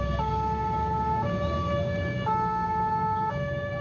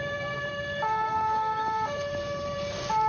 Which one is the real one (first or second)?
first